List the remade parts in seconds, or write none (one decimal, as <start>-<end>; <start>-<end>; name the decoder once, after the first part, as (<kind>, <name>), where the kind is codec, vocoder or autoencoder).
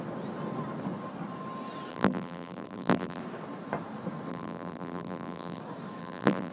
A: 1.9-3.2 (vocoder, BigVGAN v2); 4.3-5.6; 6.0-6.5